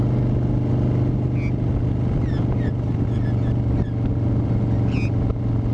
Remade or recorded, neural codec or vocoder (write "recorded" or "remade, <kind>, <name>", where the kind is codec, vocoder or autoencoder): recorded